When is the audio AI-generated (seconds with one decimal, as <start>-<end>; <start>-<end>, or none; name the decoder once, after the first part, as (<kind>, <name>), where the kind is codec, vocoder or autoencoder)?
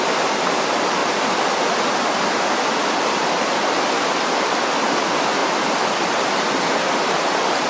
none